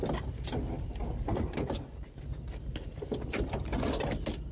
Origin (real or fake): real